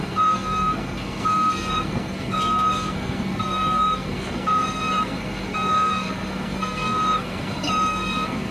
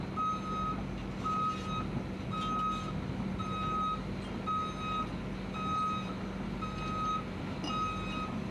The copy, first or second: first